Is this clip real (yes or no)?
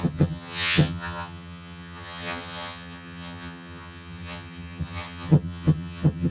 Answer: no